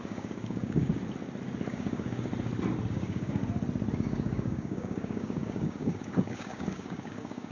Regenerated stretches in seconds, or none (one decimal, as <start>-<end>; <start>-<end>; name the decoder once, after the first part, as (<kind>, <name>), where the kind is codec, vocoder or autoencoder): 0.0-0.9 (codec, DAC); 1.7-2.3; 2.9-3.4; 3.9-7.5